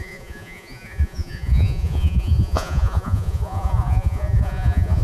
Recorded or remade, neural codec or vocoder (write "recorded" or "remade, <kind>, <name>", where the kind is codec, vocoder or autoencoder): remade, vocoder, Vocos